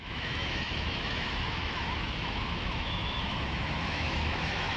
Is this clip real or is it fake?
fake